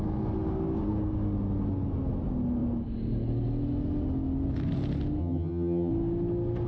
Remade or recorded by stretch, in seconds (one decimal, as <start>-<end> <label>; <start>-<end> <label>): 0.0-5.2 recorded; 5.2-5.9 remade; 5.9-6.7 recorded